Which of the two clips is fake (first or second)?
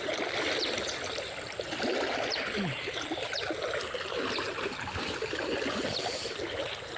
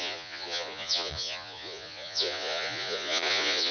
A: second